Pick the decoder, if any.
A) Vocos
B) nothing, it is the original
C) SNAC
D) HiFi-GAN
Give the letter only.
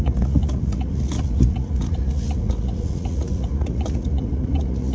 A